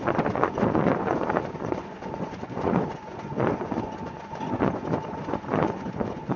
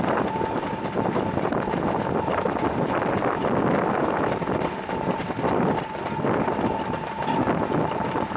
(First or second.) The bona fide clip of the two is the second